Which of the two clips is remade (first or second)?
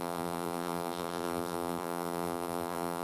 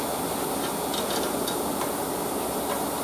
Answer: first